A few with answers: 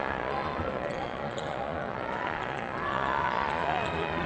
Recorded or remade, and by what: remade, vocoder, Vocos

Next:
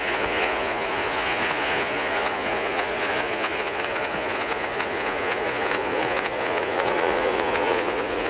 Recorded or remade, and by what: remade, vocoder, Vocos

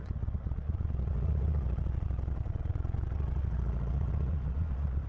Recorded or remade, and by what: remade, vocoder, Vocos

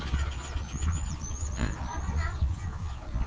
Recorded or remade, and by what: remade, vocoder, Vocos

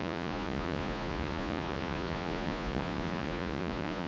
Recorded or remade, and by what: remade, vocoder, Vocos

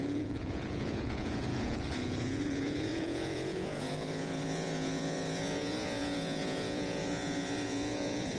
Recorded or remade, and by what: remade, vocoder, Vocos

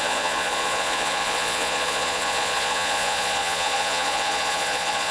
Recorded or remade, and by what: remade, vocoder, Vocos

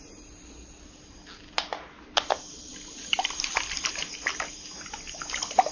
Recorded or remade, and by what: recorded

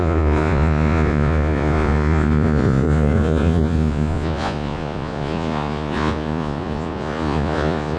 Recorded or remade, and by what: remade, vocoder, Vocos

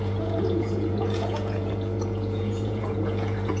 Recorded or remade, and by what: remade, vocoder, Vocos